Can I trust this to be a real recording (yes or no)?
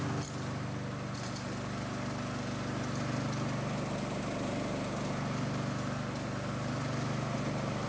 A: yes